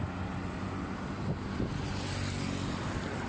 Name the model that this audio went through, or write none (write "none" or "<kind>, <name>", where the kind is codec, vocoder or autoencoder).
none